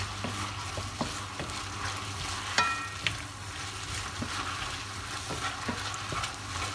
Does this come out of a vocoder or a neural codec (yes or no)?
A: no